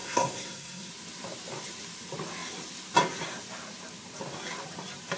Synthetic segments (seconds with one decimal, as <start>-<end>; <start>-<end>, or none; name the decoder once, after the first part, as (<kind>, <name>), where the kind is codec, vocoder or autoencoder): 0.0-0.9 (codec, SNAC)